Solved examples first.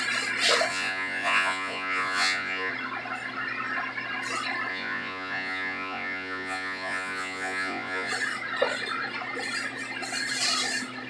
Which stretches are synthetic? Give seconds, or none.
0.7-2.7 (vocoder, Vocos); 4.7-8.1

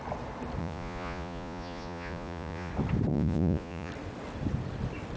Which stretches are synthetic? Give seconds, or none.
0.6-2.7 (vocoder, Vocos); 3.1-3.9